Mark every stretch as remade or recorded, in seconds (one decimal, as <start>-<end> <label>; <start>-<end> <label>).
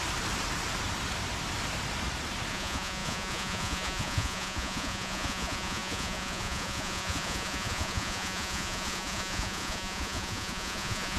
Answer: 0.0-2.5 recorded; 2.5-11.2 remade